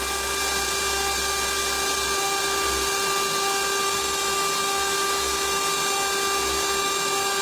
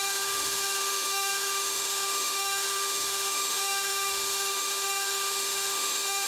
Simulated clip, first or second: second